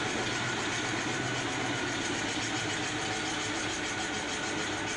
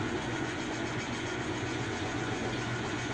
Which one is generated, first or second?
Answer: second